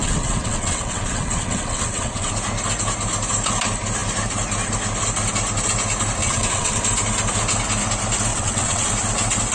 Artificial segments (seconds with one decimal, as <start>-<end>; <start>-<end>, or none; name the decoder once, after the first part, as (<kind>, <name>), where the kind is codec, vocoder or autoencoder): 0.0-2.3 (vocoder, WaveNeXt); 6.2-6.8; 8.3-8.9